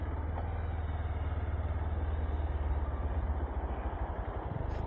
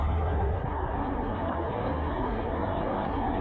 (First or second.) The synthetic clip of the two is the second